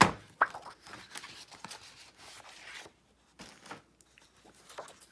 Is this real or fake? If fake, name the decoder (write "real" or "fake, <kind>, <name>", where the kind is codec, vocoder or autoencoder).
real